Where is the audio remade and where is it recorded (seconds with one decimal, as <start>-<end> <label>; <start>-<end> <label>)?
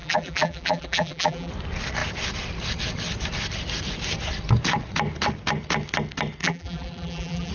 0.0-1.5 remade; 1.5-6.4 recorded; 6.4-7.5 remade